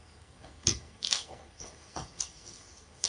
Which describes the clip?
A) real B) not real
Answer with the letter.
B